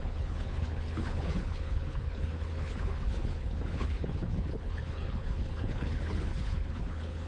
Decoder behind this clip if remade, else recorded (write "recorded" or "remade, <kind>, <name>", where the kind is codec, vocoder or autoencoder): remade, codec, HILCodec